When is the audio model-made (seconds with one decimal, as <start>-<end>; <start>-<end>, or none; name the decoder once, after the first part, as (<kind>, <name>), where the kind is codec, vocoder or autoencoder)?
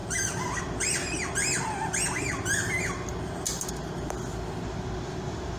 0.0-0.6 (vocoder, BigVGAN v2)